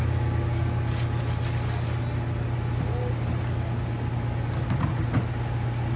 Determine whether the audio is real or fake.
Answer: real